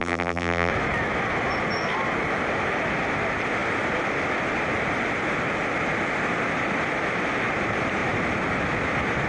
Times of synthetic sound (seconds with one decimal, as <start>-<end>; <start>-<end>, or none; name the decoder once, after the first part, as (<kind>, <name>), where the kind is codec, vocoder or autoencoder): 0.0-0.7 (vocoder, BigVGAN v2)